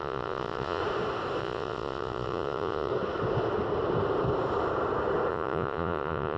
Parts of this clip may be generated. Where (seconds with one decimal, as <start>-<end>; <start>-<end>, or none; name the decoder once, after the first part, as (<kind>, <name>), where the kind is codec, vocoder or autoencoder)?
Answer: 0.0-0.8 (vocoder, Vocos); 1.4-2.9; 5.3-6.4